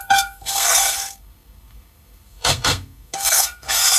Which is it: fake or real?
fake